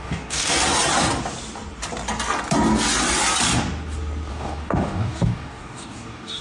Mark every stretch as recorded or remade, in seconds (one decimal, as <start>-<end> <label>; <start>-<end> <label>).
0.0-0.5 remade; 0.5-4.3 recorded; 4.3-6.4 remade